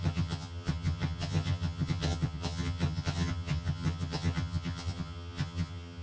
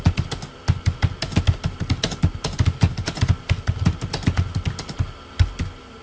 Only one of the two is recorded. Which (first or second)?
second